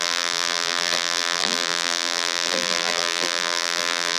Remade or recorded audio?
remade